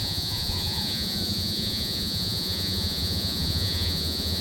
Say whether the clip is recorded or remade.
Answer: remade